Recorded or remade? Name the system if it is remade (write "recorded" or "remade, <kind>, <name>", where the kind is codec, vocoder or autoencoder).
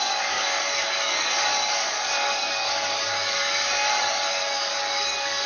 remade, codec, DAC